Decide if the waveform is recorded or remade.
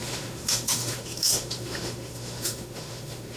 remade